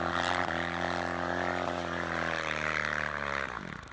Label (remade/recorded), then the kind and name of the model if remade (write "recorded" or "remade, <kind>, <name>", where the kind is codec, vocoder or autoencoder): recorded